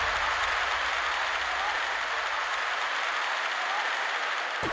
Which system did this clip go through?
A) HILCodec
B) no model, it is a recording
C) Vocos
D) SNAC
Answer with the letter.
B